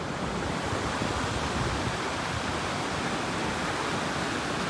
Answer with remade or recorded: recorded